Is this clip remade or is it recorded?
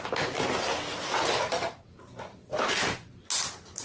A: recorded